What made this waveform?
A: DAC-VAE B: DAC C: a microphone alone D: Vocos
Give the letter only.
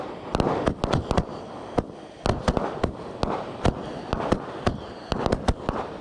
C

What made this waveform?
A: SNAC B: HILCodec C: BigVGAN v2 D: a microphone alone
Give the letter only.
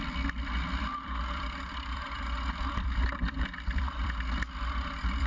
C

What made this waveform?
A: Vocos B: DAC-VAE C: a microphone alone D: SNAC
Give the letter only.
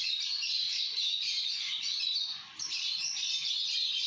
C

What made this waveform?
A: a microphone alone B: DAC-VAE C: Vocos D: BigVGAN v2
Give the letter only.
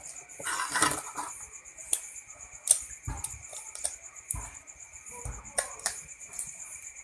D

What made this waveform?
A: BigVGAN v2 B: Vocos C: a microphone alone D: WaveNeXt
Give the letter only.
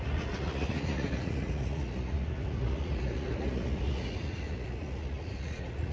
B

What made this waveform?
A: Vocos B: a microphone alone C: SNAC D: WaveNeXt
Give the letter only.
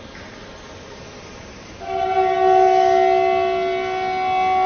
B